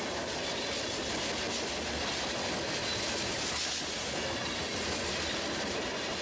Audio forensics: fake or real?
real